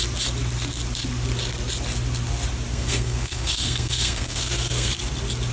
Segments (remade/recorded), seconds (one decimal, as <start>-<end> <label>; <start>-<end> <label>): 0.0-2.7 recorded; 2.7-4.9 remade; 4.9-5.5 recorded